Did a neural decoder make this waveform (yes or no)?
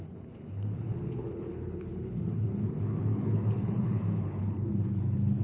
yes